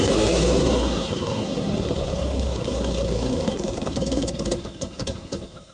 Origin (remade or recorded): remade